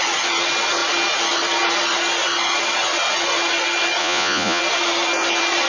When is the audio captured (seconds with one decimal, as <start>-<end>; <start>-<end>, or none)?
0.0-4.0; 4.6-5.7